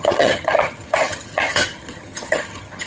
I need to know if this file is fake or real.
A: fake